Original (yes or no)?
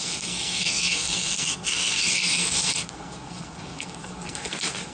no